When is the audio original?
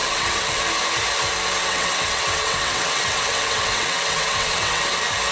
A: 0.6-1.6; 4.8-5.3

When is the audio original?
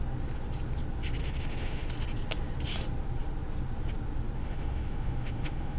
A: 0.0-1.2; 1.9-4.4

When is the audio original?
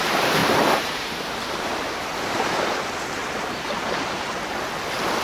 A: 0.0-0.4; 2.8-5.2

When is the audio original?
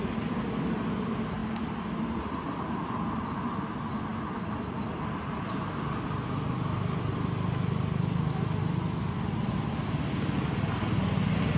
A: 0.0-11.6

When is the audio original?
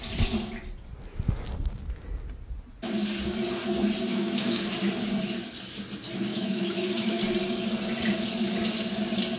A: 0.0-4.1; 4.7-6.3; 7.2-9.4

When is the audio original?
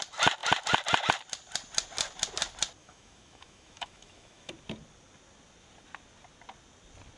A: 0.0-2.8; 4.5-7.2